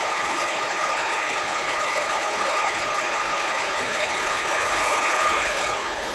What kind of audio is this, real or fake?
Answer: fake